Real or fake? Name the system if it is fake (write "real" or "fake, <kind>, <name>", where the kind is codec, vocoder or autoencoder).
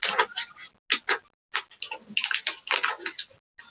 real